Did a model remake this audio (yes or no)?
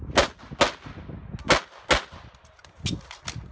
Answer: no